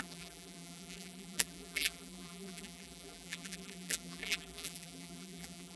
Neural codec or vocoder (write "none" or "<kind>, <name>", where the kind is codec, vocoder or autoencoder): vocoder, BigVGAN v2